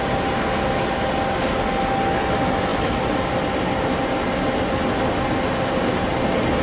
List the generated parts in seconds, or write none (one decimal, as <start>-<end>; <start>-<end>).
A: 2.7-3.5